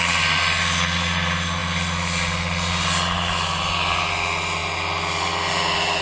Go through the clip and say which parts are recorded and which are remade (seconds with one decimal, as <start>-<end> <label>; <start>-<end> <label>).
0.0-6.0 recorded